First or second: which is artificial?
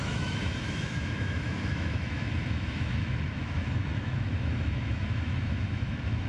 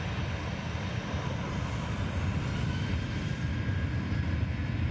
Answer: first